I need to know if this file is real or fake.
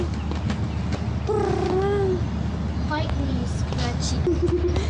real